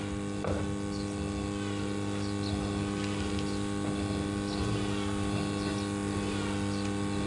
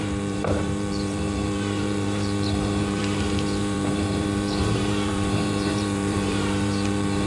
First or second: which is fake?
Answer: second